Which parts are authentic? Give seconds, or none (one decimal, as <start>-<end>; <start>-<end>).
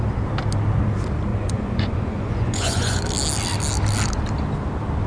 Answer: 0.0-1.3; 3.0-5.1